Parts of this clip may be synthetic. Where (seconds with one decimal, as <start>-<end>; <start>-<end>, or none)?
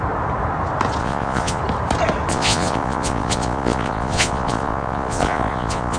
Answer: 1.0-1.6; 2.3-6.0